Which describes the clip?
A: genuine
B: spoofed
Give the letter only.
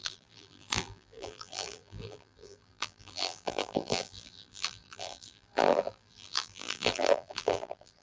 B